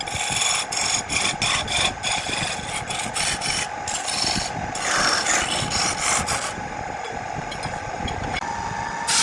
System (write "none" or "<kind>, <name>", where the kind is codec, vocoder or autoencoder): none